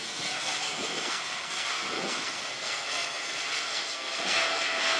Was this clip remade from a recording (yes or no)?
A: yes